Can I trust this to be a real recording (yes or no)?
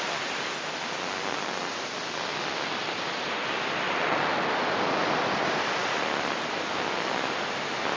yes